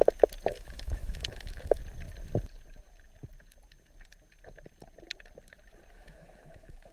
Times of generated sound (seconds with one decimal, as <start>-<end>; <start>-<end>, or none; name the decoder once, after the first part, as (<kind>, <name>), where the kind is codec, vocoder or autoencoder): 0.5-1.8 (autoencoder, DAC-VAE); 5.9-6.9